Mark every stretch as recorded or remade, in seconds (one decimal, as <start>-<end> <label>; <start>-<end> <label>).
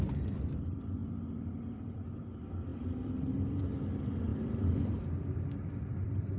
0.0-6.4 remade